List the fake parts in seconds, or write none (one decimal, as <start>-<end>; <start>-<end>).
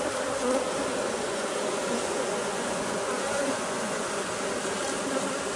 0.9-4.3